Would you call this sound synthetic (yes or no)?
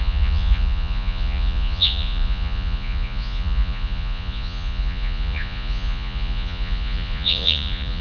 yes